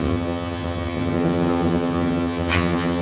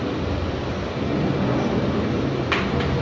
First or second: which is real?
second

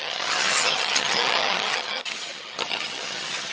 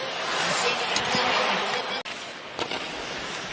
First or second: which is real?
second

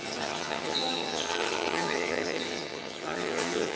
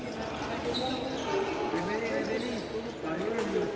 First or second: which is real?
second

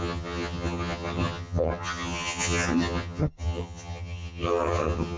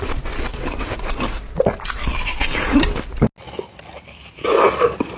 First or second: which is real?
second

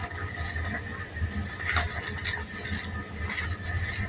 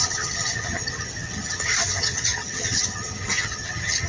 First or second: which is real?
first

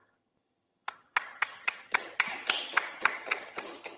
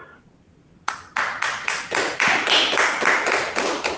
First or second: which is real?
second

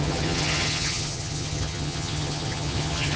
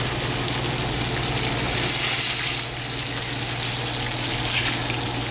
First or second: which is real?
second